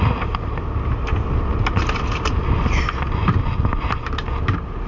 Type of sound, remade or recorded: recorded